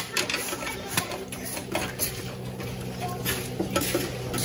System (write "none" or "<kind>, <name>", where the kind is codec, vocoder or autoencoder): none